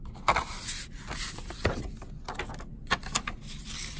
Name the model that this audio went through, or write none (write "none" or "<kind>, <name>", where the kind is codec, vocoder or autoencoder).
none